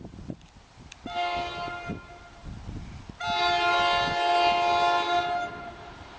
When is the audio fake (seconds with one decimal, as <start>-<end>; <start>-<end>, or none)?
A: none